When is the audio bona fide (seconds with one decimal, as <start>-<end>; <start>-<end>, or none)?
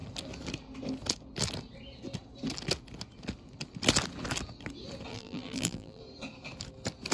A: 0.0-5.1; 6.0-7.1